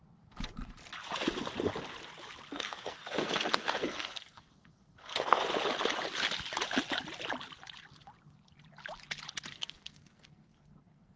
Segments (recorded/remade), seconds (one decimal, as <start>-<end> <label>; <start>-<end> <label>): 0.0-2.5 recorded; 2.5-5.4 remade; 5.4-9.5 recorded; 9.5-11.2 remade